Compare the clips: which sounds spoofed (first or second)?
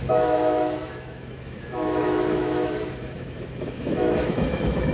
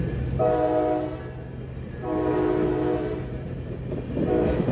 first